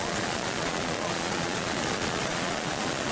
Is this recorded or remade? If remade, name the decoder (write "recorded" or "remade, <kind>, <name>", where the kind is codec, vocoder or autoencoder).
remade, vocoder, Vocos